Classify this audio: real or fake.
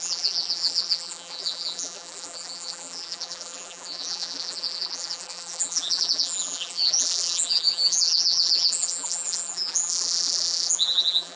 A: fake